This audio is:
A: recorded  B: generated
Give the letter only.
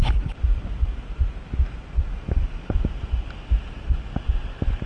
A